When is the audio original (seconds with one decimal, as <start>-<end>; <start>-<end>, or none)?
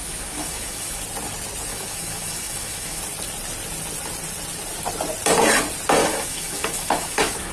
1.0-1.7; 3.0-6.0